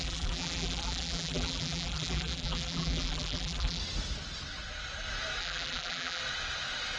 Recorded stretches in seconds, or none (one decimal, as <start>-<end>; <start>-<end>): 3.8-5.4; 6.2-7.0